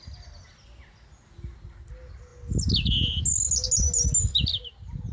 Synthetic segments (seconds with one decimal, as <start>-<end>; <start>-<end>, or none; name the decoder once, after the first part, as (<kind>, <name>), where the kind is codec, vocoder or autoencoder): none